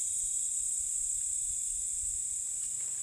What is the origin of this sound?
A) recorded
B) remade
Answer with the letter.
A